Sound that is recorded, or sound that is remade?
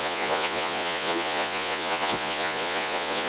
remade